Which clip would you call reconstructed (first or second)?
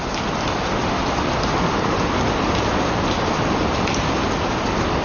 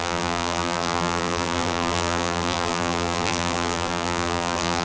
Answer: second